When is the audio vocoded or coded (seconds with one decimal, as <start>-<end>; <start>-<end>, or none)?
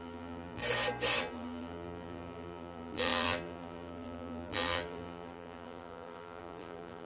0.0-0.6; 1.2-7.1